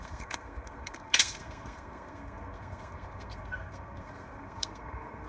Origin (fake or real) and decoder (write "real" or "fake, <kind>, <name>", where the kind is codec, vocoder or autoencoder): fake, codec, SNAC